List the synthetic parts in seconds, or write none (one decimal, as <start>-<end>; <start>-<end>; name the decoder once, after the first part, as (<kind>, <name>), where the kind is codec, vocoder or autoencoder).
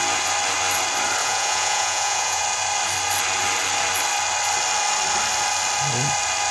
1.2-2.4 (vocoder, Vocos)